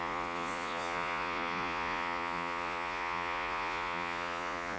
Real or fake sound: fake